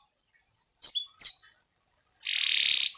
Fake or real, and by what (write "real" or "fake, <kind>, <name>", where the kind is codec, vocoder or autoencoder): real